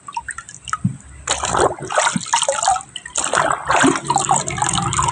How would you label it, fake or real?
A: real